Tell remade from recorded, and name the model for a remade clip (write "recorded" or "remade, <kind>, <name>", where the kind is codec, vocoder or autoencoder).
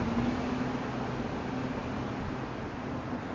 recorded